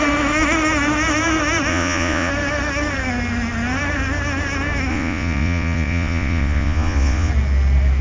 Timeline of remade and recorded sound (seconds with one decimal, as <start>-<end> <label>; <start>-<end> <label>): 0.0-1.7 recorded; 1.7-2.3 remade; 2.3-4.9 recorded; 4.9-7.3 remade; 7.3-8.0 recorded